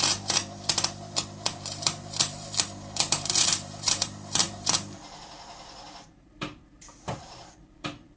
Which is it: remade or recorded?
remade